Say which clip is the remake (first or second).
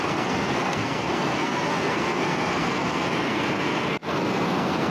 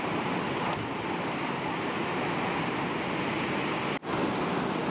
first